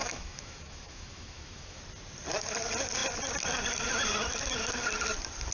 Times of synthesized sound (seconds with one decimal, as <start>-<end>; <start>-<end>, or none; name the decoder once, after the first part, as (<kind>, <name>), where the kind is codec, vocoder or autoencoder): 0.0-1.8 (autoencoder, DAC-VAE)